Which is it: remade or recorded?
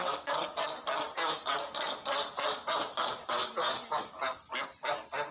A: recorded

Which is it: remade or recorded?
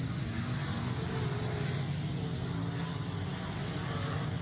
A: recorded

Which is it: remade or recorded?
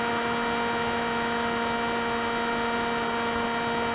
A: recorded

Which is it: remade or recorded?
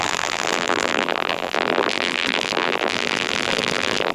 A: remade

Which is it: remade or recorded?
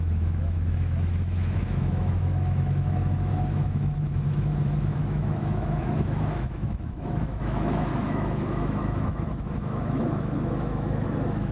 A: remade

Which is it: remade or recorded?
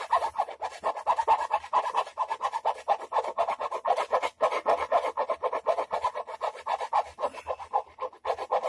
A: recorded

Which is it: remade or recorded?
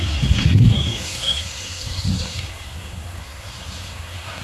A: remade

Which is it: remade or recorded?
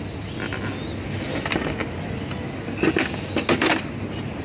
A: recorded